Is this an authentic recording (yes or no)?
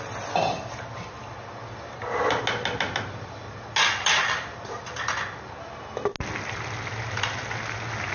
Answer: yes